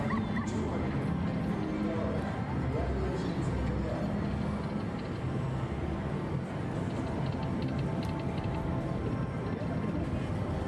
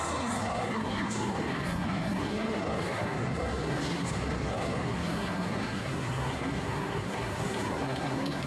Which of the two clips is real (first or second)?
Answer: first